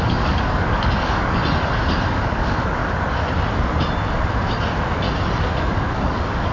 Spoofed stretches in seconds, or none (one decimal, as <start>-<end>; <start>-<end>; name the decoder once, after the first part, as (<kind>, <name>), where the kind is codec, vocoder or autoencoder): 0.0-1.4 (codec, DAC); 2.1-2.8; 5.4-6.5